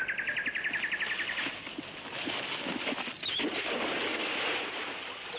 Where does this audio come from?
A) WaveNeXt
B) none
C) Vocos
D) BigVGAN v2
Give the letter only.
B